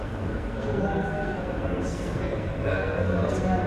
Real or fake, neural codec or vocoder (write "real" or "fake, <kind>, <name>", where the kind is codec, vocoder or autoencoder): fake, codec, SNAC